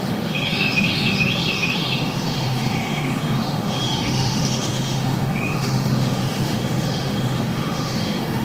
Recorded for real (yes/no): no